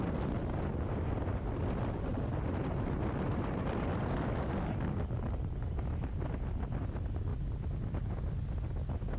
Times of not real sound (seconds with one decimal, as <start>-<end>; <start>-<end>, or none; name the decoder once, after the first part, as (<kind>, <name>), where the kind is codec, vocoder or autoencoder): none